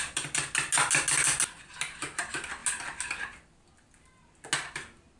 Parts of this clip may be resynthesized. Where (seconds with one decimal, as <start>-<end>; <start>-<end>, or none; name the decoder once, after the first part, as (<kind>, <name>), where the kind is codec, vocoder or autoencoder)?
none